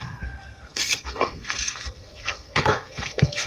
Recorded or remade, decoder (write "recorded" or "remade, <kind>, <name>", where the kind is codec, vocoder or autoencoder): remade, codec, SNAC